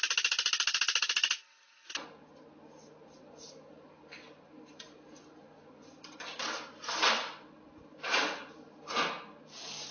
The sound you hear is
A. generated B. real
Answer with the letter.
B